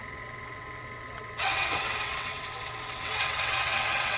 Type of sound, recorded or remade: remade